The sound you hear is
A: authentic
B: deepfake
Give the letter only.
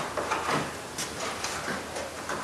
A